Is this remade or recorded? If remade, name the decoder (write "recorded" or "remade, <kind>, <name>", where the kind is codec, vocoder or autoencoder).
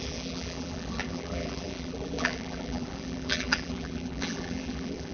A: remade, vocoder, BigVGAN v2